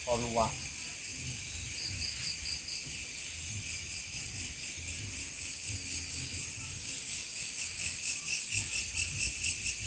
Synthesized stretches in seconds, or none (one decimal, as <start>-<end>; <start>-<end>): 5.2-8.7